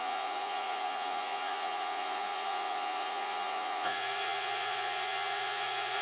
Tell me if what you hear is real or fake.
fake